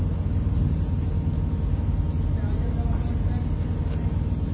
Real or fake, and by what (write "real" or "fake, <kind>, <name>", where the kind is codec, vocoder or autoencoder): real